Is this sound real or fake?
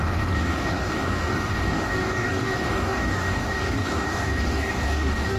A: fake